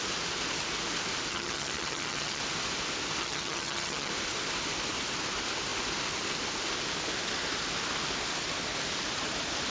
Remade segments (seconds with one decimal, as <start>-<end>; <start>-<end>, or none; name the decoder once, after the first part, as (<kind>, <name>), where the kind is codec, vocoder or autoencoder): 1.3-2.4 (vocoder, HiFi-GAN); 3.2-4.1